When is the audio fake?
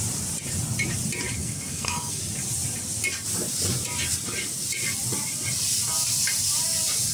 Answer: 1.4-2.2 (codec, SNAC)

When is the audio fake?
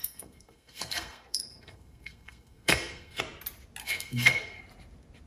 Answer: 0.0-3.2 (codec, SNAC); 3.8-4.6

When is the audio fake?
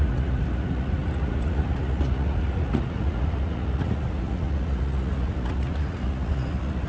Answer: 0.0-6.9 (vocoder, Vocos)